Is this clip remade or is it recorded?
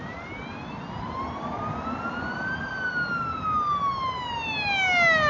recorded